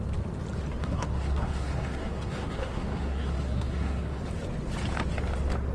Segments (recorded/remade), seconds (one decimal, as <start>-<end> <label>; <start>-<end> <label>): 0.0-0.8 recorded; 0.8-4.2 remade; 4.2-5.7 recorded